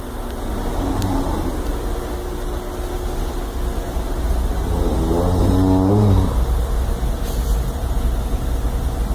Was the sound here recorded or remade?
recorded